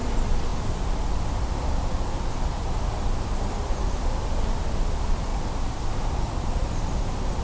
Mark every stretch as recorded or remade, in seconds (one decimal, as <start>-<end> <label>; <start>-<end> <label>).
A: 0.0-7.4 recorded